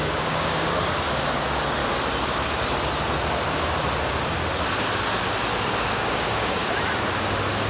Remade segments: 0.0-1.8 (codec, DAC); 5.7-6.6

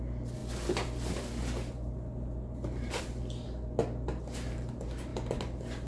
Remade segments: none

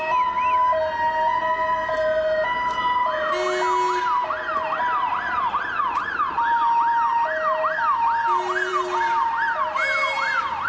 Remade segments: 8.7-9.3 (vocoder, BigVGAN v2); 9.8-10.7

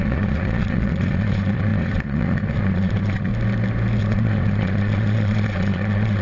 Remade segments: 0.0-3.3 (vocoder, Vocos); 4.0-6.2